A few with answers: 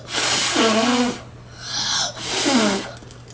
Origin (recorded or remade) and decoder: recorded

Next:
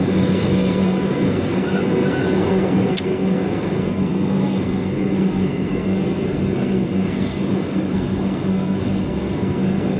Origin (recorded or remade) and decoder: remade, codec, SNAC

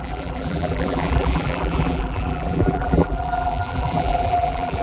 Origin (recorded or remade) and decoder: remade, vocoder, BigVGAN v2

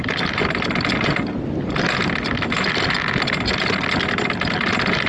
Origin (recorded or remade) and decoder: recorded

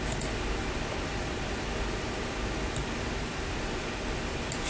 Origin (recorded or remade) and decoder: recorded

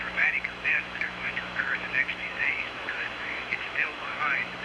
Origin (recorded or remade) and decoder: remade, autoencoder, DAC-VAE